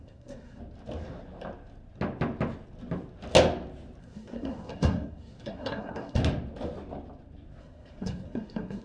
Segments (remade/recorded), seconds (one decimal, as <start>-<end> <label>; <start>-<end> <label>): 0.0-0.6 remade; 0.6-4.0 recorded; 4.0-6.2 remade; 6.2-7.6 recorded; 7.6-8.8 remade

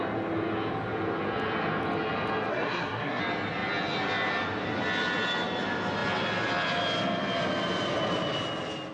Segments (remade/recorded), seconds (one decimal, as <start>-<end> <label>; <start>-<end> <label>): 0.0-2.5 recorded; 2.5-3.2 remade; 3.2-8.9 recorded

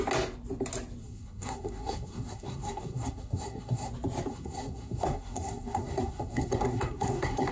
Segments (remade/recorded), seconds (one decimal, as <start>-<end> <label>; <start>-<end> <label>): 0.0-1.0 recorded; 1.0-3.9 remade; 3.9-4.3 recorded; 4.3-7.5 remade

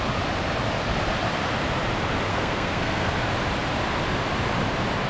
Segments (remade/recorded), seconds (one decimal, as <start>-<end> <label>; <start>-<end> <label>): 0.0-2.3 recorded; 2.3-3.1 remade; 3.1-5.1 recorded

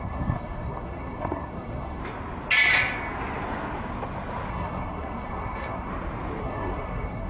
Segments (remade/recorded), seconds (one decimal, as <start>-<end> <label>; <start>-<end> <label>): 0.0-2.0 remade; 2.0-4.5 recorded; 4.5-5.9 remade; 5.9-6.4 recorded; 6.4-7.3 remade

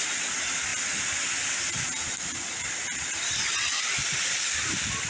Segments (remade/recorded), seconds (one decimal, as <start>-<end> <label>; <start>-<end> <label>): 0.0-5.1 recorded